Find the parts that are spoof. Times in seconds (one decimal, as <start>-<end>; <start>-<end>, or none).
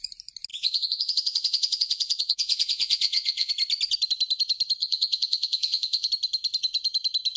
0.5-3.5; 4.8-6.1